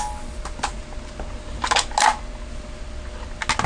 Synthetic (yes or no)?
no